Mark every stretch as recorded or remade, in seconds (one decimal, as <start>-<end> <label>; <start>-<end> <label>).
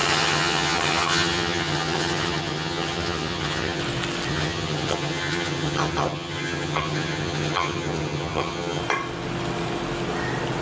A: 0.0-3.8 remade; 3.8-4.3 recorded; 4.3-8.8 remade; 8.8-10.6 recorded